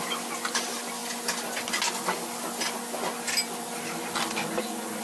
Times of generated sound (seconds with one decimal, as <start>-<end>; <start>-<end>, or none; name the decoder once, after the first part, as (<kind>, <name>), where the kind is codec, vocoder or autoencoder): none

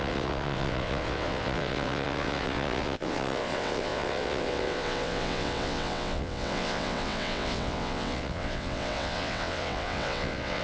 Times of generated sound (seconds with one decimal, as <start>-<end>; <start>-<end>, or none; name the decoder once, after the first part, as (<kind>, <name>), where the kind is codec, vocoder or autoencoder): 0.0-10.6 (vocoder, WaveNeXt)

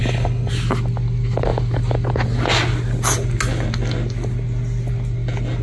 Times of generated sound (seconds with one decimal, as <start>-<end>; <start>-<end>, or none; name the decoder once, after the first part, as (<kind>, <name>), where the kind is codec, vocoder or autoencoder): 0.0-0.5 (codec, HILCodec)

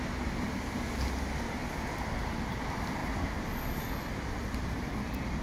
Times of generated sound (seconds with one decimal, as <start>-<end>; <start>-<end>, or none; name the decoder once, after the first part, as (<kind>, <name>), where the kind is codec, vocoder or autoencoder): none

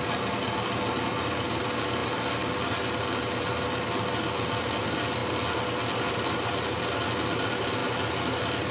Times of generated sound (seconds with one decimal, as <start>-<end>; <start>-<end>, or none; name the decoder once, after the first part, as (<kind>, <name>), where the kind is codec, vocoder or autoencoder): none